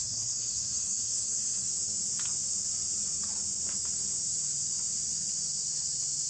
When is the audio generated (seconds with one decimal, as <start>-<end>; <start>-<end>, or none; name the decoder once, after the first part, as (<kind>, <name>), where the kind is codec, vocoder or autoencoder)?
0.0-1.7 (codec, SNAC)